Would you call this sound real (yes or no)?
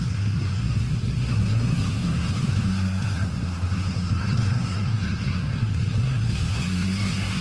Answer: no